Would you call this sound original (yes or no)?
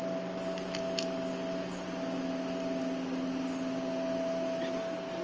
yes